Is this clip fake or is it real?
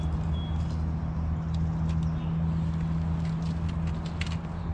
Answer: real